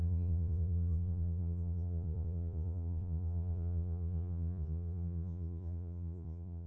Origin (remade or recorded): remade